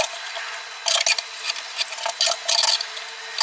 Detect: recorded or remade recorded